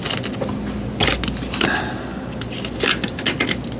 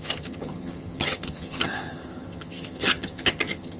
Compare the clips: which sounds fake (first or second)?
second